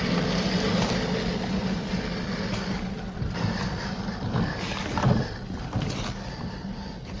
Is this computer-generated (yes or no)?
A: no